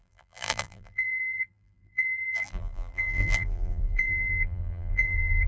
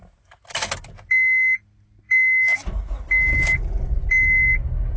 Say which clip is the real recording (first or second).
second